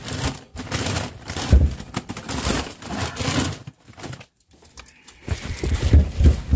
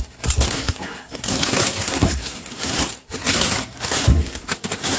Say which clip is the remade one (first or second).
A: second